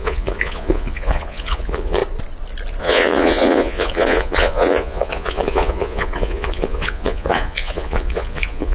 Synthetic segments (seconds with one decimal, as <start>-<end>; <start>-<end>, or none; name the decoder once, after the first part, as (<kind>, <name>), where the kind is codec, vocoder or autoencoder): 0.0-2.0 (vocoder, Vocos); 2.8-8.7